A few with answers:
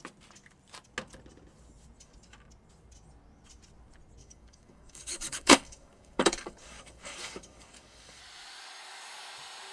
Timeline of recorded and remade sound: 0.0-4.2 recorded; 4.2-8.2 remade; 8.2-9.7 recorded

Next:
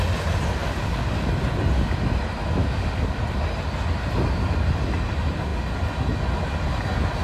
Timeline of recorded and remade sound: 0.0-0.6 recorded; 0.6-1.3 remade; 1.3-2.6 recorded; 2.6-3.2 remade; 3.2-7.2 recorded

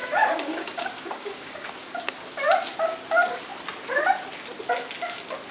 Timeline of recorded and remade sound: 0.0-1.7 remade; 1.7-5.5 recorded

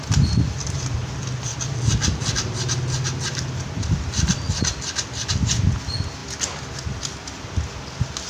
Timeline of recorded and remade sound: 0.0-8.3 recorded

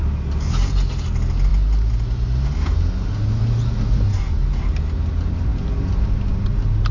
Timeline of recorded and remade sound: 0.0-6.9 recorded

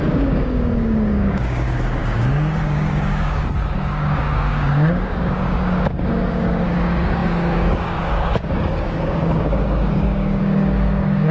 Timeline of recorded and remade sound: 0.0-11.3 remade